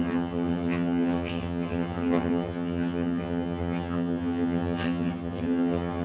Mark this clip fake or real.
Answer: fake